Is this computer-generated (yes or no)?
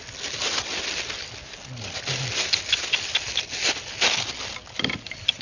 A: no